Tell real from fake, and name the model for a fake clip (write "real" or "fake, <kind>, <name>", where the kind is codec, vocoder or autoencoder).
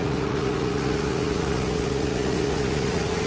fake, vocoder, Vocos